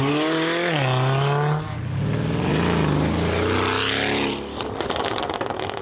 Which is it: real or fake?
real